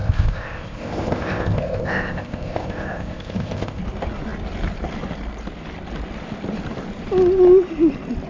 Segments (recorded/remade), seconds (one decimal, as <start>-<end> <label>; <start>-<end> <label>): 0.0-3.8 remade; 3.8-8.3 recorded